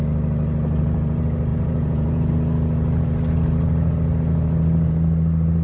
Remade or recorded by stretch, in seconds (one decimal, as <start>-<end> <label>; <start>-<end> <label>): 0.0-1.5 recorded; 1.5-2.3 remade; 2.3-5.6 recorded